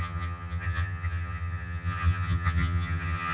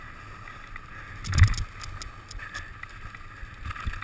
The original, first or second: second